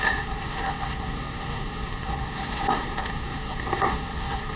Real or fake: fake